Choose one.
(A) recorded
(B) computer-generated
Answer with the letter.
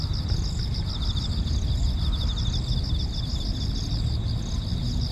A